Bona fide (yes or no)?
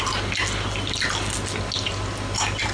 yes